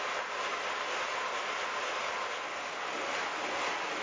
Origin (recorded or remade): recorded